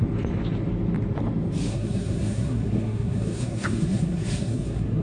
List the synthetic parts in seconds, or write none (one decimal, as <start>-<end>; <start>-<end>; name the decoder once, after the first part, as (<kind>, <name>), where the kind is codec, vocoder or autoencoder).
1.7-5.0 (codec, SNAC)